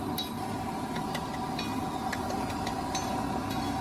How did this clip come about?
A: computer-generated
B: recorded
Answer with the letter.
B